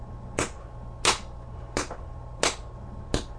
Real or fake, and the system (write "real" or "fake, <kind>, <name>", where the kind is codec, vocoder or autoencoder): real